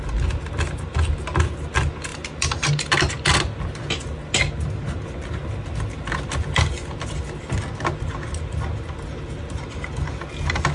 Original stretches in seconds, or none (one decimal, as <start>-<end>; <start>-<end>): 0.0-2.1; 3.1-10.7